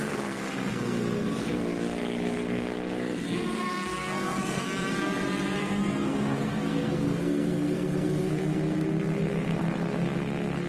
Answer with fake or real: fake